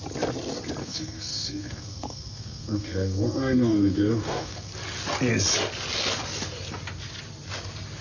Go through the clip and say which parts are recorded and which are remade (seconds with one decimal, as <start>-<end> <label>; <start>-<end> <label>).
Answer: 0.0-0.8 recorded; 0.8-4.7 remade; 4.7-8.0 recorded